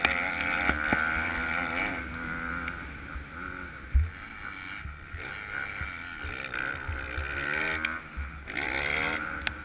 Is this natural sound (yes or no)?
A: yes